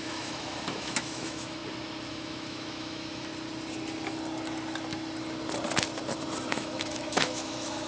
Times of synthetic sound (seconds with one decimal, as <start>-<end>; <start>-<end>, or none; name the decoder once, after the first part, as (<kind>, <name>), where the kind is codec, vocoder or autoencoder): 0.0-1.6 (autoencoder, DAC-VAE); 2.1-3.3; 6.5-7.9